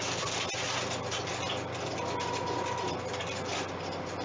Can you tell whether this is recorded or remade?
recorded